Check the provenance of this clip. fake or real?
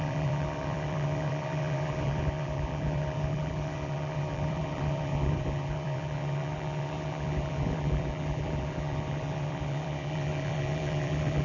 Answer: fake